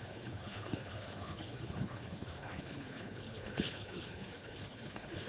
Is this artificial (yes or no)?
yes